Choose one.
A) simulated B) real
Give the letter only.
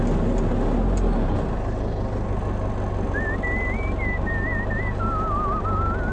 B